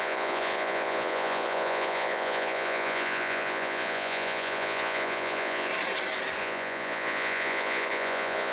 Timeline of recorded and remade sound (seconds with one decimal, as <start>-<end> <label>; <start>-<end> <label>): 0.0-5.7 remade; 5.7-6.4 recorded; 6.4-8.5 remade